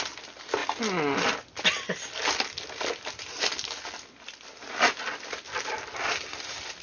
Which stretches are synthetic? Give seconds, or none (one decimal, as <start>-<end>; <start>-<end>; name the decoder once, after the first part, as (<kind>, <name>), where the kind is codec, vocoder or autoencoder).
none